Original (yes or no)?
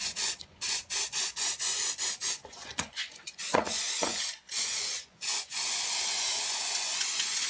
no